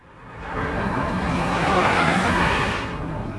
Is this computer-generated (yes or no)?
yes